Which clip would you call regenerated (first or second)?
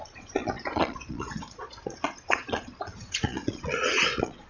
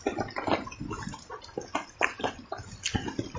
first